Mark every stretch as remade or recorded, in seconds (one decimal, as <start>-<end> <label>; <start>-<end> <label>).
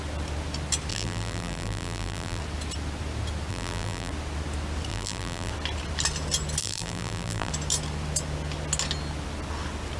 0.0-0.9 recorded; 0.9-2.4 remade; 2.4-3.5 recorded; 3.5-4.1 remade; 4.1-4.9 recorded; 4.9-5.5 remade; 5.5-6.6 recorded; 6.6-7.5 remade; 7.5-10.0 recorded